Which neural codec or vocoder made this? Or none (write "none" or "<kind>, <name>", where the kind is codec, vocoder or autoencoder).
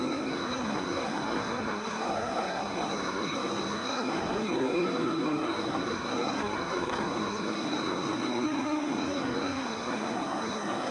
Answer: codec, SNAC